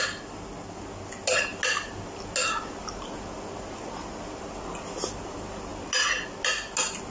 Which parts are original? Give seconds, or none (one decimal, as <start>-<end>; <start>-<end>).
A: 0.0-7.1